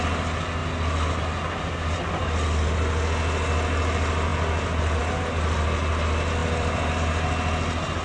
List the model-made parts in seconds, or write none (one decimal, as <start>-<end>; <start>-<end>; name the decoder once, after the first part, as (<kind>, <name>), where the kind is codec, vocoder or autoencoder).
6.4-7.0 (vocoder, BigVGAN v2)